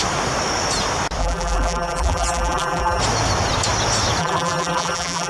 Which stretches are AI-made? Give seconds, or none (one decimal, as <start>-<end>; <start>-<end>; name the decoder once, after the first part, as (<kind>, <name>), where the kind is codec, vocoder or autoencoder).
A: 1.2-3.0 (vocoder, BigVGAN v2); 4.2-5.3